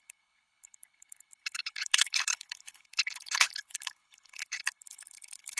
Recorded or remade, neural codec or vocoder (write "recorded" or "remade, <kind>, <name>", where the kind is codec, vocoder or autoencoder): remade, codec, HILCodec